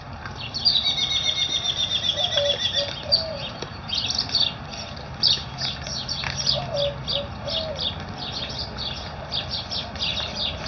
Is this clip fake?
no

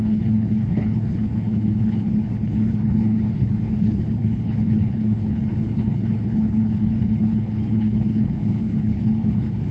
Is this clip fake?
yes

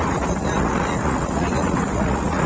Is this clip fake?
yes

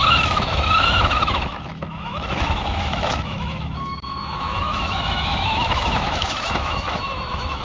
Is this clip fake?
yes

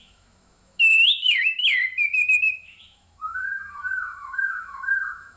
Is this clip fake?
yes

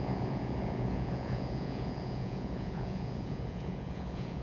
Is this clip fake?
yes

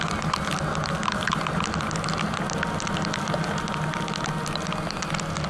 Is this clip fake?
no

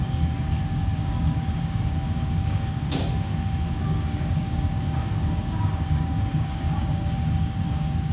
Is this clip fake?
yes